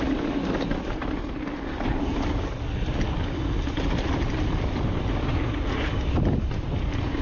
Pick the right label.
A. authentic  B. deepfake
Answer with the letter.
A